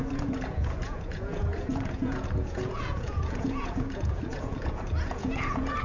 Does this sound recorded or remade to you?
remade